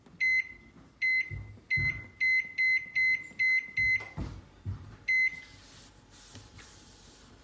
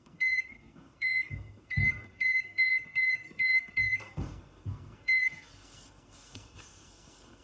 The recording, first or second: first